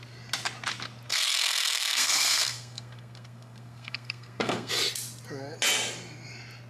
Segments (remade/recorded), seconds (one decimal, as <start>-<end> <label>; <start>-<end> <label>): 0.0-1.1 recorded; 1.1-4.7 remade; 4.7-6.7 recorded